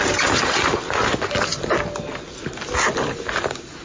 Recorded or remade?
recorded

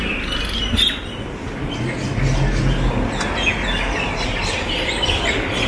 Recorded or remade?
recorded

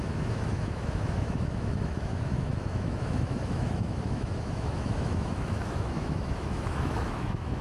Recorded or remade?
remade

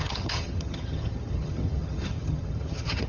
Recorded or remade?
remade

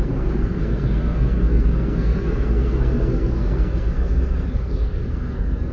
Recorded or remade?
remade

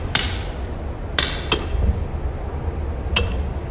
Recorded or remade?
recorded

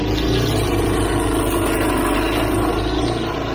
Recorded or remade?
recorded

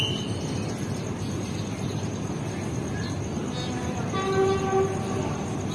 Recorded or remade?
recorded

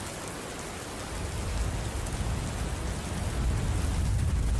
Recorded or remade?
recorded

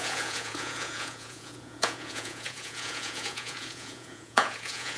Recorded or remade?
remade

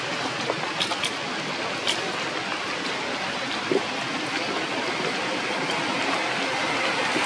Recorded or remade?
recorded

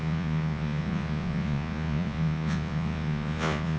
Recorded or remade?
remade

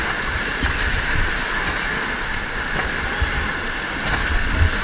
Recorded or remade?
recorded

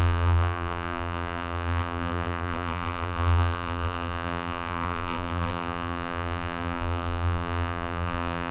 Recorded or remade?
remade